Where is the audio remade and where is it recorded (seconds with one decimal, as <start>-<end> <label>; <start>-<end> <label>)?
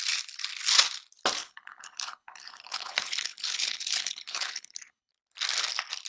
0.0-1.4 recorded; 1.4-5.1 remade; 5.1-6.1 recorded